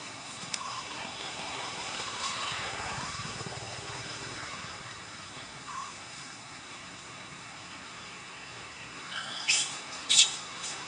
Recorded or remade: remade